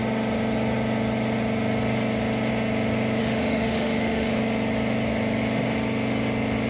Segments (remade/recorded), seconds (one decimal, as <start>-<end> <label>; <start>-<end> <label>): 0.0-3.2 recorded; 3.2-4.4 remade; 4.4-6.7 recorded